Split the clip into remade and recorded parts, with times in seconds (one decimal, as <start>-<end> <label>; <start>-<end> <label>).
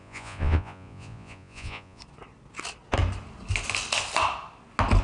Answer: 0.0-2.0 remade; 2.0-5.0 recorded